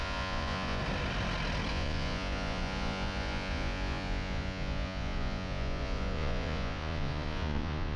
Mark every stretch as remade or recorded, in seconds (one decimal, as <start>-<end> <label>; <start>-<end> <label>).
0.0-0.8 remade; 0.8-1.7 recorded; 1.7-8.0 remade